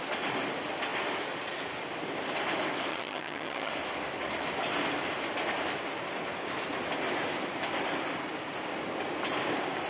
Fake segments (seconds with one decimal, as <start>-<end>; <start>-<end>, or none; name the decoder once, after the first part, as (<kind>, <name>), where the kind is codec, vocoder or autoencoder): 2.9-3.7 (vocoder, HiFi-GAN)

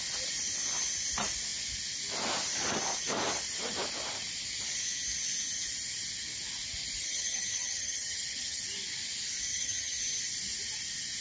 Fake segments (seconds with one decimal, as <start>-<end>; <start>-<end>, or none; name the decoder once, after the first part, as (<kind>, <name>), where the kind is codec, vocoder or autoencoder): 7.0-8.6 (vocoder, HiFi-GAN); 9.5-10.0

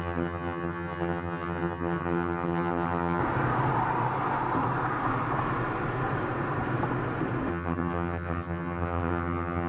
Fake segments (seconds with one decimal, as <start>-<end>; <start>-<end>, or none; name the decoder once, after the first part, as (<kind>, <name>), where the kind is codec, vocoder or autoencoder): 0.0-3.2 (vocoder, HiFi-GAN); 7.5-9.7

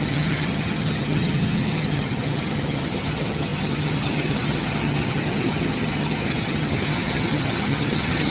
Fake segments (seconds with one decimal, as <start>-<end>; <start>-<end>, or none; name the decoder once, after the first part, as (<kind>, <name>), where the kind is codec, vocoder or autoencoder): 0.0-8.3 (vocoder, HiFi-GAN)